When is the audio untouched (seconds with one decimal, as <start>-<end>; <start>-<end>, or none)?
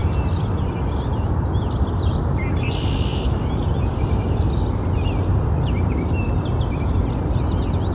0.0-3.1; 4.3-5.3; 6.0-7.9